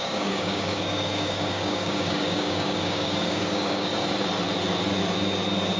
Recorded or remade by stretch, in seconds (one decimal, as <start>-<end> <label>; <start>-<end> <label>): 0.0-3.9 remade; 3.9-5.8 recorded